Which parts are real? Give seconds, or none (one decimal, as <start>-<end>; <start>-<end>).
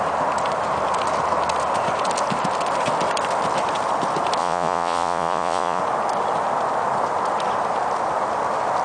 0.0-4.4; 5.8-8.8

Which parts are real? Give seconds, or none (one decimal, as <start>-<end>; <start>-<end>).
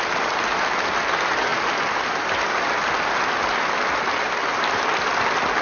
0.0-5.6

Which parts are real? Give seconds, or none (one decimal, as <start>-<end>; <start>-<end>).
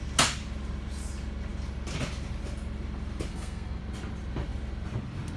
0.0-3.3; 3.8-5.4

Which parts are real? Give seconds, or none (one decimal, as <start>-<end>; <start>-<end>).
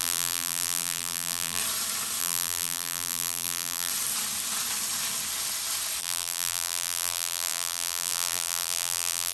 1.6-2.2; 3.9-6.0